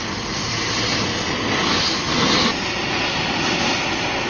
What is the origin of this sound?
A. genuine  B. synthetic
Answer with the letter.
A